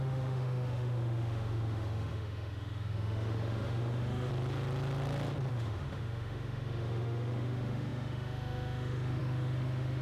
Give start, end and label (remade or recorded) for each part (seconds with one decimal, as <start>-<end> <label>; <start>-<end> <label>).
0.0-4.3 remade; 4.3-5.5 recorded; 5.5-10.0 remade